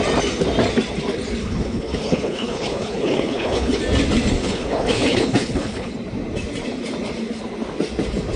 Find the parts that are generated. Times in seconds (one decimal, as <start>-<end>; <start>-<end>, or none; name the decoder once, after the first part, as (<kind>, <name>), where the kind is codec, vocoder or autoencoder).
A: 1.4-3.8 (codec, HILCodec); 4.4-5.9